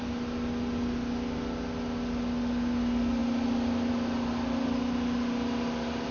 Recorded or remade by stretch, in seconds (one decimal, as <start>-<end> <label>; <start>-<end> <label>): 0.0-6.1 recorded

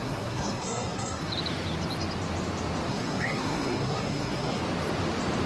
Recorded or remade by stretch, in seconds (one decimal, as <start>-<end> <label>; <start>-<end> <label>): 0.0-1.3 remade; 1.3-2.9 recorded; 2.9-4.6 remade; 4.6-5.5 recorded

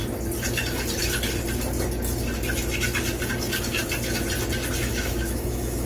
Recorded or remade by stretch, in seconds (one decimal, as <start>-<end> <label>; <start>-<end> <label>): 0.0-4.9 recorded; 4.9-5.9 remade

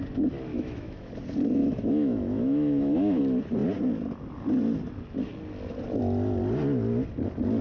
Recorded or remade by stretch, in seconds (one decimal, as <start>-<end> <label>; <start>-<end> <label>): 0.0-0.5 recorded; 0.5-1.1 remade; 1.1-1.6 recorded; 1.6-3.2 remade; 3.2-7.6 recorded

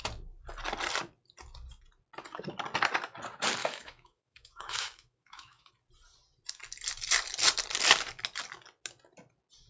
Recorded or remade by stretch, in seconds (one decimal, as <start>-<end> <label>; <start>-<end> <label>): 0.0-3.6 recorded; 3.6-5.7 remade; 5.7-9.7 recorded

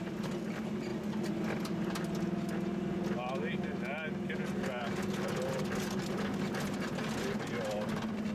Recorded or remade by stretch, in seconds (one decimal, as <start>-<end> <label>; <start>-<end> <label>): 0.0-8.3 recorded

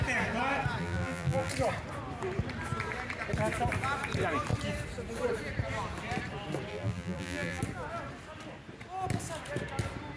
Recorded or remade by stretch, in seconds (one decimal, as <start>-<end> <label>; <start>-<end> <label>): 0.0-0.8 recorded; 0.8-1.5 remade; 1.5-6.7 recorded; 6.7-7.6 remade; 7.6-10.2 recorded